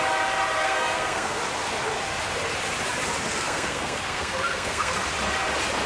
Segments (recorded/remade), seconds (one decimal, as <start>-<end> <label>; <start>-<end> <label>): 0.0-0.6 recorded; 0.6-1.4 remade; 1.4-3.3 recorded; 3.3-4.9 remade; 4.9-5.9 recorded